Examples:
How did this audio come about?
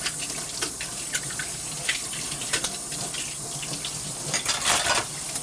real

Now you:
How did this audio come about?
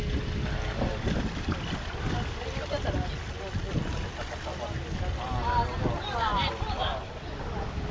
real